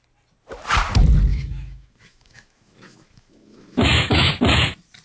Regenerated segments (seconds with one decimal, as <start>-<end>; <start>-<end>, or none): 1.3-4.3